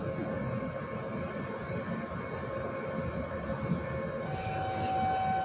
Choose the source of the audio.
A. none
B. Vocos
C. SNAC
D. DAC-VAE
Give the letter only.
A